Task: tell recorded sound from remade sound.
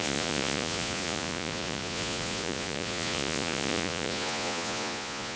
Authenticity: remade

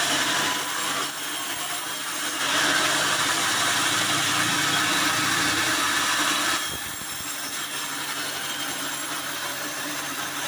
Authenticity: remade